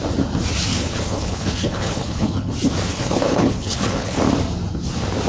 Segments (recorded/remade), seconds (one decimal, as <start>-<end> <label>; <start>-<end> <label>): 0.0-0.7 recorded; 0.7-2.5 remade; 2.5-2.9 recorded; 2.9-4.2 remade; 4.2-5.3 recorded